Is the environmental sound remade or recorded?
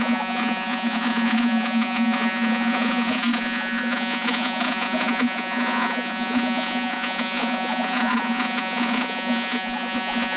remade